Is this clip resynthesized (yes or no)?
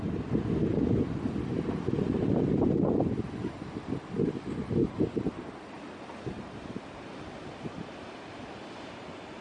no